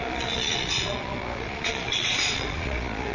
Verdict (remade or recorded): remade